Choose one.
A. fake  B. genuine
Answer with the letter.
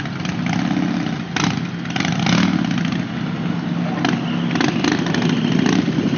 B